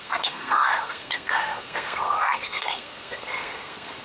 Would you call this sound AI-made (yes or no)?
yes